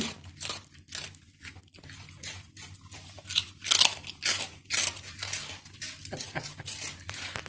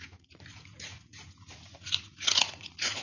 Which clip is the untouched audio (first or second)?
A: first